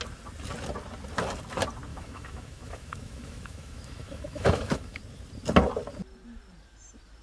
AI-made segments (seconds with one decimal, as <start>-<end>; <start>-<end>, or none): 1.9-5.0